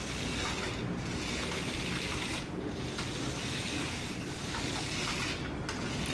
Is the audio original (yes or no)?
yes